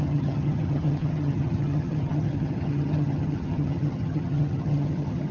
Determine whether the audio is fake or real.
fake